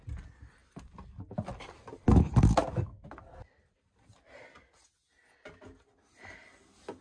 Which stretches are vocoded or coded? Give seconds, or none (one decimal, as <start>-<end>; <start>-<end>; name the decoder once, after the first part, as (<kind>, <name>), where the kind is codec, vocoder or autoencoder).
none